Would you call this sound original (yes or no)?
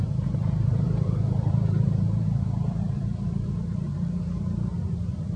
no